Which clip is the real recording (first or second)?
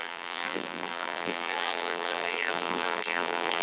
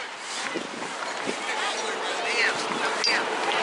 second